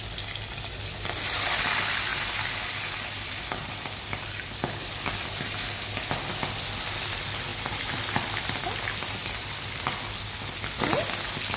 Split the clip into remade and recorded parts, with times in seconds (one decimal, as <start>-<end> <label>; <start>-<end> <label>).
0.0-11.6 recorded